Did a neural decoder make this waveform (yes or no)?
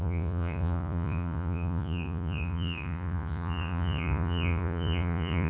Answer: yes